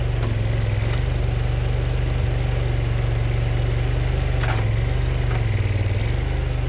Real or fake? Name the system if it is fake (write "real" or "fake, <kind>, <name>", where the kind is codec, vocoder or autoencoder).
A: real